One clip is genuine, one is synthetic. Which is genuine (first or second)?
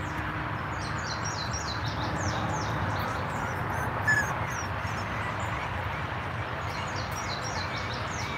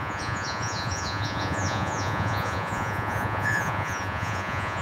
first